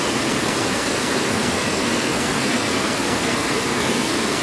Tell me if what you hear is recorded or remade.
remade